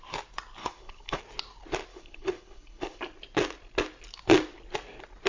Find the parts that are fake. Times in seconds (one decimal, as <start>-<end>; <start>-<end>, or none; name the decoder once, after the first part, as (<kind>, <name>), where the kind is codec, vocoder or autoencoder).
0.6-1.2 (codec, HILCodec); 1.9-3.0